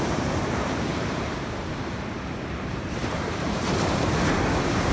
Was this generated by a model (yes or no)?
yes